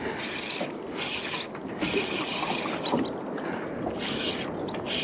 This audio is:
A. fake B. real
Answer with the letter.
B